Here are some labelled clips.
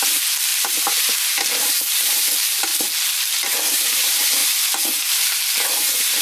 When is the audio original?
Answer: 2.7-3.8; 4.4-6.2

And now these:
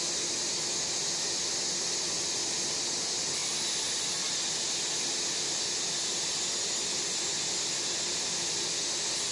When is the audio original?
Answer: 0.0-9.3

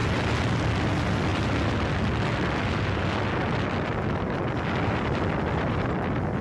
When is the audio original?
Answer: 0.0-6.4